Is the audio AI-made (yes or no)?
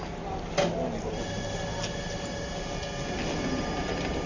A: no